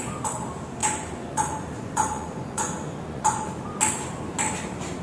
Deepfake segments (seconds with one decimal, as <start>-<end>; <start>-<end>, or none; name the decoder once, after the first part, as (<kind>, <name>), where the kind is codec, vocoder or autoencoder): 0.8-3.5 (vocoder, Vocos)